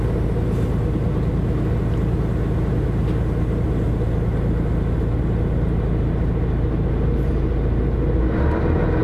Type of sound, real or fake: real